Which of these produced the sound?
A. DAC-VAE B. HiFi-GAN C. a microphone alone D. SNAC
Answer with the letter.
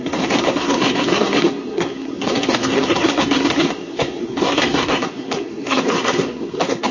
D